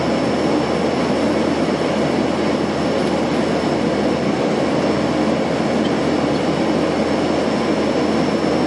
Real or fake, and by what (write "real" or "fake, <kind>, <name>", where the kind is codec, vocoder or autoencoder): real